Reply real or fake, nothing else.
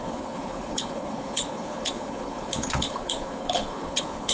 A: fake